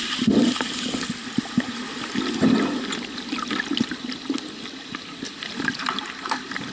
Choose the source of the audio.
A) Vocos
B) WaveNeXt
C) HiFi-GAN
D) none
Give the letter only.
D